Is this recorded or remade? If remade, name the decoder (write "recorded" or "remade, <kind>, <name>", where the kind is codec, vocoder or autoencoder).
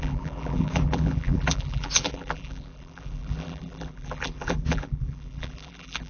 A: remade, vocoder, BigVGAN v2